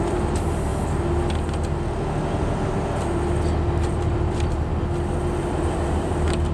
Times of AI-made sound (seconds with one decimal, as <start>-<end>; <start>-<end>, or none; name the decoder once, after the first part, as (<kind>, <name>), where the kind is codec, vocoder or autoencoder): 0.0-0.7 (vocoder, BigVGAN v2); 3.8-4.7; 5.4-6.5